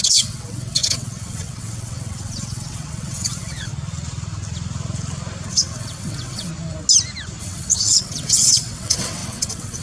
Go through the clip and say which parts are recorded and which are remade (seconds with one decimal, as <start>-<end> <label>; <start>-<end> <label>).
0.0-3.7 remade; 3.7-5.5 recorded; 5.5-6.5 remade; 6.5-7.4 recorded; 7.4-9.8 remade